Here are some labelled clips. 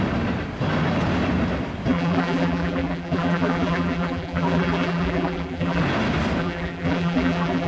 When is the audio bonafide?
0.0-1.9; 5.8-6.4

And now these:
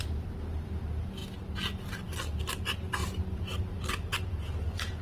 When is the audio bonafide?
0.0-5.0